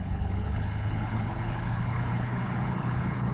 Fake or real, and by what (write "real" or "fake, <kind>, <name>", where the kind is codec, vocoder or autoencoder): fake, codec, HILCodec